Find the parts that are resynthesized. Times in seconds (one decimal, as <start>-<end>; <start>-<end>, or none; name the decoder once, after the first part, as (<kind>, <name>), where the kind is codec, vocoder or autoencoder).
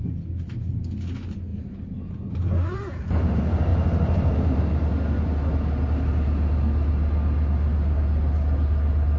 none